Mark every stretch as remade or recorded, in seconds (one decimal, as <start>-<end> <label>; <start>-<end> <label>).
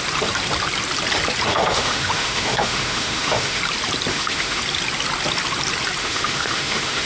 0.0-1.5 recorded; 1.5-3.6 remade; 3.6-4.1 recorded; 4.1-4.6 remade; 4.6-6.0 recorded; 6.0-7.1 remade